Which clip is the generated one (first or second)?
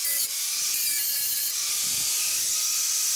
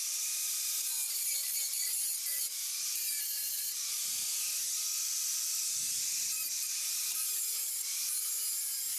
second